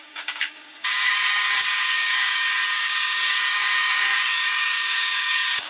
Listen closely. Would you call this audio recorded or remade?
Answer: remade